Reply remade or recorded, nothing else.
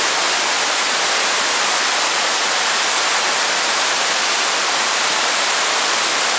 recorded